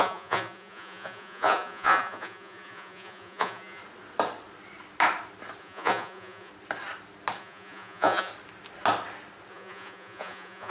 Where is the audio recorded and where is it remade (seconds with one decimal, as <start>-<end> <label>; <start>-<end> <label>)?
0.0-3.8 remade; 3.8-5.6 recorded; 5.6-6.5 remade; 6.5-7.4 recorded; 7.4-8.3 remade; 8.3-9.5 recorded; 9.5-10.7 remade